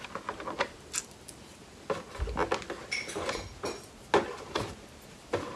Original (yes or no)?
yes